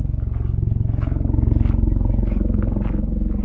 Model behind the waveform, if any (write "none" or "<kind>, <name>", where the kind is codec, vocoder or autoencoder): none